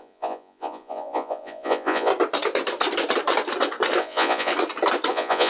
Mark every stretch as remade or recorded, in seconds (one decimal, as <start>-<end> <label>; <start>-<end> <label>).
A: 0.0-2.1 remade; 2.1-4.0 recorded; 4.0-4.5 remade; 4.5-5.1 recorded; 5.1-5.5 remade